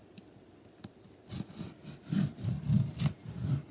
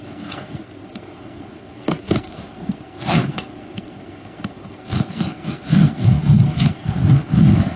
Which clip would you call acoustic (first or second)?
first